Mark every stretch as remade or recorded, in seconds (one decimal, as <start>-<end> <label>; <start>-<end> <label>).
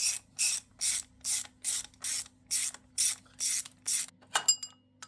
0.0-5.1 recorded